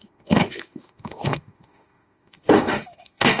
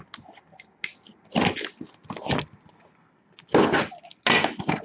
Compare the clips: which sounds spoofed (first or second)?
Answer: first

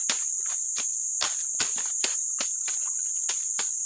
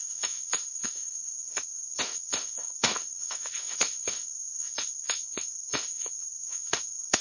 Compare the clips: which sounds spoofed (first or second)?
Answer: second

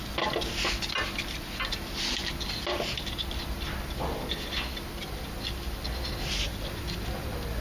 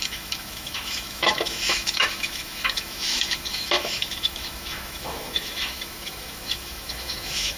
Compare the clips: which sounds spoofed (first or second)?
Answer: second